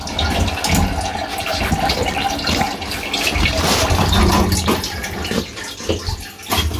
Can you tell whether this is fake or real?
real